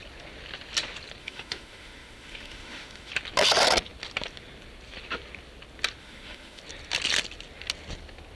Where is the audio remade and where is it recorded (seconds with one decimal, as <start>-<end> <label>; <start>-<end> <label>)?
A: 0.0-1.2 recorded; 1.2-3.1 remade; 3.1-6.0 recorded; 6.0-6.6 remade; 6.6-8.3 recorded